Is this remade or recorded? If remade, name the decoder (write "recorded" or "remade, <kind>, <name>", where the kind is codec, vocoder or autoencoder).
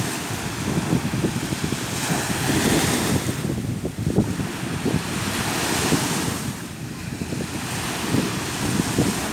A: recorded